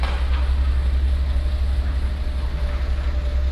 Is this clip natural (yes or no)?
yes